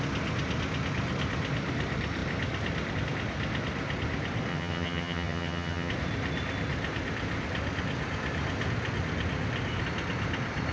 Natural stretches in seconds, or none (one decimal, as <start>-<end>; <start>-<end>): 0.0-4.5; 5.9-10.7